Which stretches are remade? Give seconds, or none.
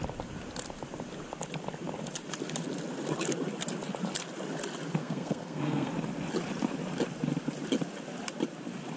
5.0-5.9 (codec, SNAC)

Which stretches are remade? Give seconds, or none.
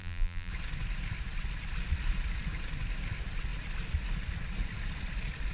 0.0-0.5 (vocoder, BigVGAN v2)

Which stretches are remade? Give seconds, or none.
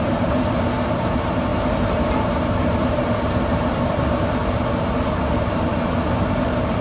0.0-4.4 (vocoder, BigVGAN v2); 5.3-6.8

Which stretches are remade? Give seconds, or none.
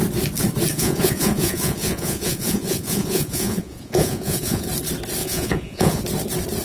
0.7-4.7 (vocoder, Vocos); 5.2-6.0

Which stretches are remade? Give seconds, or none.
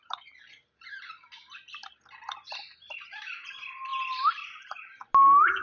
none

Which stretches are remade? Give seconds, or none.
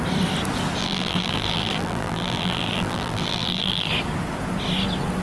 0.8-3.9 (vocoder, BigVGAN v2)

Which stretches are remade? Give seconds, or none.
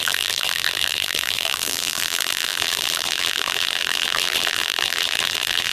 0.0-5.7 (vocoder, BigVGAN v2)